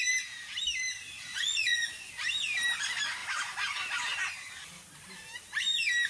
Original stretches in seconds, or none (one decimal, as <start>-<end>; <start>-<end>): 0.0-1.3; 2.1-6.1